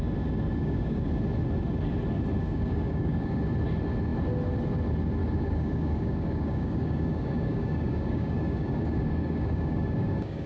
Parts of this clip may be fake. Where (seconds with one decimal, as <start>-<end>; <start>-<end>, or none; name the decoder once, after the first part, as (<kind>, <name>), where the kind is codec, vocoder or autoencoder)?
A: 0.5-1.1 (codec, DAC); 2.4-3.4; 5.2-10.5